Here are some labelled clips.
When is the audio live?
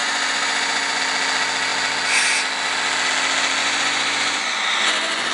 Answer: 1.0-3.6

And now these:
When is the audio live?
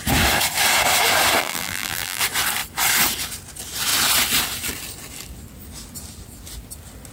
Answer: 0.0-1.4; 2.2-7.1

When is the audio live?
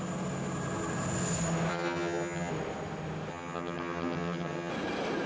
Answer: 0.0-1.7; 2.5-3.3; 4.7-5.3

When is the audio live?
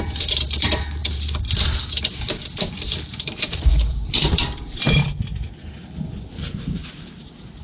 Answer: 5.0-6.3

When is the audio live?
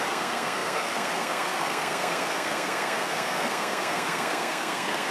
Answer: none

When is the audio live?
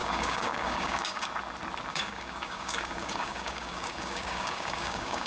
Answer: 1.3-1.9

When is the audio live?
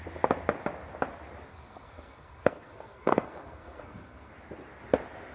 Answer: 0.0-1.5; 4.3-5.3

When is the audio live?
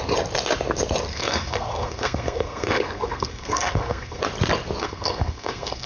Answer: 0.0-1.1; 4.2-4.8